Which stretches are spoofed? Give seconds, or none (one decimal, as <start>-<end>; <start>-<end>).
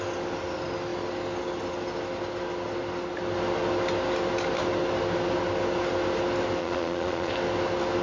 6.6-7.3